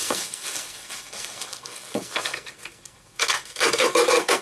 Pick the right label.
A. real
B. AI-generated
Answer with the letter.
B